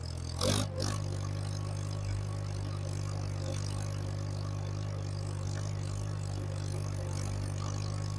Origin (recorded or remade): recorded